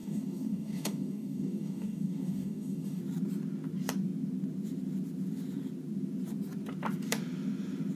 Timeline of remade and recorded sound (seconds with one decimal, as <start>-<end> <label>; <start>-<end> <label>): 0.0-3.0 remade; 3.0-8.0 recorded